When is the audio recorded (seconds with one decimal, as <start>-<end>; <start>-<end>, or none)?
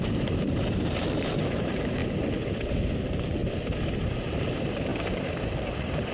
2.0-2.5; 3.4-4.2; 4.9-5.5